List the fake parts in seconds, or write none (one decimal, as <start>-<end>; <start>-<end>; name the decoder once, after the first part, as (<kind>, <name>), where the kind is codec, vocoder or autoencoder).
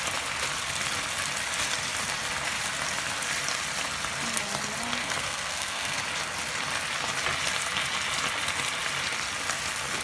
5.0-6.0 (codec, SNAC)